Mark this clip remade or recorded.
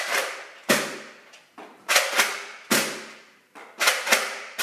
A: recorded